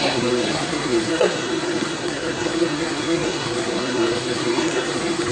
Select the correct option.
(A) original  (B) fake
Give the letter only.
B